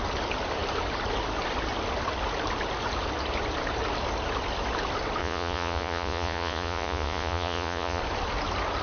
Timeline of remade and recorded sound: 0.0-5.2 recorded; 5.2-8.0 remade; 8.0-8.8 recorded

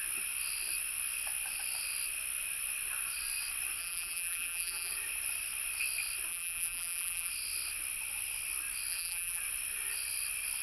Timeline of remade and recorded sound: 0.0-3.8 recorded; 3.8-4.9 remade; 4.9-6.3 recorded; 6.3-7.3 remade; 7.3-8.9 recorded; 8.9-9.4 remade; 9.4-10.6 recorded

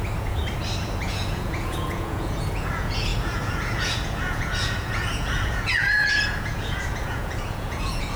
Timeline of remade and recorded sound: 0.0-0.4 remade; 0.4-1.0 recorded; 1.0-8.2 remade

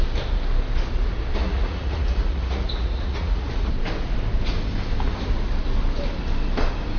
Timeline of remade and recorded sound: 0.0-1.4 recorded; 1.4-3.7 remade; 3.7-7.0 recorded

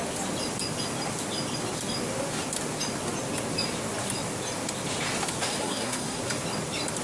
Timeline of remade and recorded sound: 0.0-5.6 recorded; 5.6-6.2 remade; 6.2-7.0 recorded